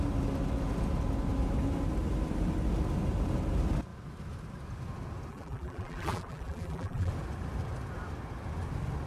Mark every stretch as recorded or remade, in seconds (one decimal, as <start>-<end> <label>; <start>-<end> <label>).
0.0-5.3 recorded; 5.3-7.1 remade; 7.1-9.1 recorded